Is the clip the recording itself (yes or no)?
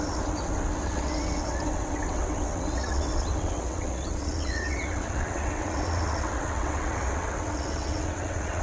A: no